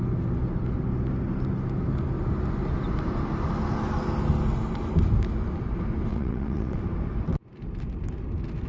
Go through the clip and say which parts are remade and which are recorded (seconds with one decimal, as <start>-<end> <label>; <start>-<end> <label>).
0.0-6.1 recorded; 6.1-6.8 remade; 6.8-8.7 recorded